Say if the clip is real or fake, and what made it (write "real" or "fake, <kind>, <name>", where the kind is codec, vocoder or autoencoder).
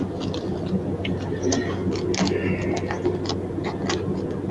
real